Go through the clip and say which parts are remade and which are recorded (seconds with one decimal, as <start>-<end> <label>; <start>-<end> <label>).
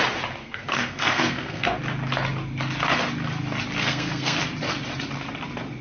0.0-0.4 recorded; 0.4-1.8 remade; 1.8-3.8 recorded; 3.8-4.4 remade; 4.4-5.8 recorded